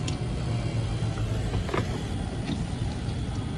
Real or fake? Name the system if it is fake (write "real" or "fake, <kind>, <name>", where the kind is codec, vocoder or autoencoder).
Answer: real